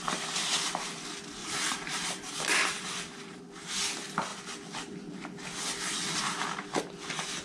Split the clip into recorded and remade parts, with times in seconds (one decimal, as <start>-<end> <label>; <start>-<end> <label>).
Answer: 0.0-1.4 recorded; 1.4-3.4 remade; 3.4-7.4 recorded